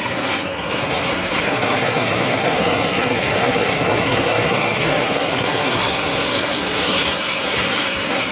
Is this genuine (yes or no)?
no